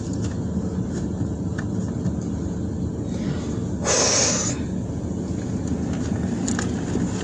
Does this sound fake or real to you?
real